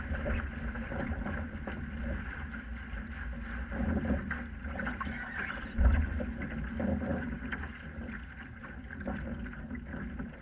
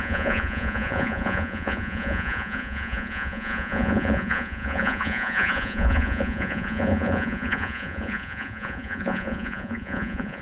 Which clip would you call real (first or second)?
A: first